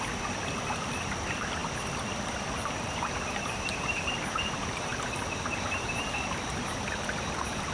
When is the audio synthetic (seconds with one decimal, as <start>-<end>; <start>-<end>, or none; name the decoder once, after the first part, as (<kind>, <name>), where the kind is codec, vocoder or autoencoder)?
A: none